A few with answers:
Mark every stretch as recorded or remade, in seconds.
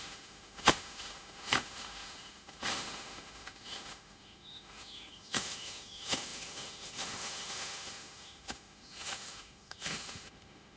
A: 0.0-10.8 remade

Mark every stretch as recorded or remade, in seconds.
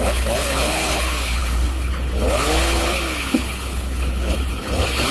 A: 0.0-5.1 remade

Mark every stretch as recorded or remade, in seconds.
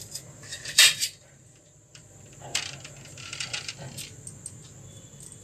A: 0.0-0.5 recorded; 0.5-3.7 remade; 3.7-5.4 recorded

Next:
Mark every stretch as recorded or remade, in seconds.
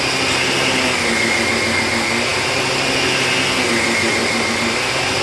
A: 0.0-4.2 recorded; 4.2-4.8 remade; 4.8-5.2 recorded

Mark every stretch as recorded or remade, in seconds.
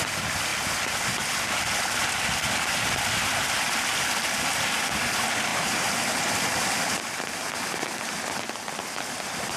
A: 0.0-5.5 recorded; 5.5-6.3 remade; 6.3-9.6 recorded